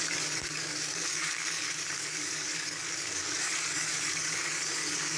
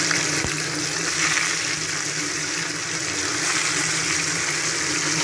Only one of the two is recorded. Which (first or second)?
second